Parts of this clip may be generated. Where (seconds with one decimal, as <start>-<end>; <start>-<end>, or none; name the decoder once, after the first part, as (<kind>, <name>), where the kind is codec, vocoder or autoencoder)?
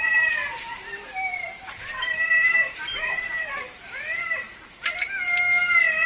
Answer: 0.0-6.1 (vocoder, BigVGAN v2)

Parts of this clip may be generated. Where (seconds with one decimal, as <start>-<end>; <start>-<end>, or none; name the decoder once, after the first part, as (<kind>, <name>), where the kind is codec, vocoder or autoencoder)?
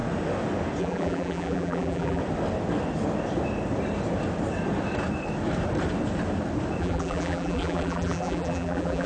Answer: 0.8-2.2 (vocoder, BigVGAN v2); 6.8-9.1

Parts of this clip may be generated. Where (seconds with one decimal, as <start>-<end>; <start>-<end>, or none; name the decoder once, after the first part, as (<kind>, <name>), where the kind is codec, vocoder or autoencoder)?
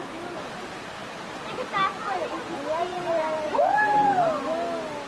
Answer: 1.0-2.2 (vocoder, BigVGAN v2)